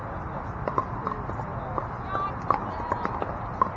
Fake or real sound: real